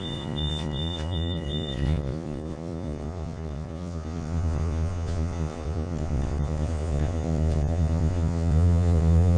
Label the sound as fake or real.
fake